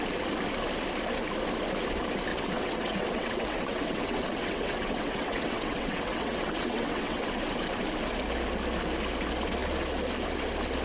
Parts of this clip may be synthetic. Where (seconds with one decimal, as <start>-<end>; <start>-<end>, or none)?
2.3-7.3